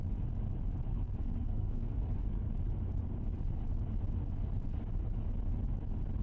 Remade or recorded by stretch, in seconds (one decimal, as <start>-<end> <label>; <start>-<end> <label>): 0.0-0.9 recorded; 0.9-2.5 remade; 2.5-6.2 recorded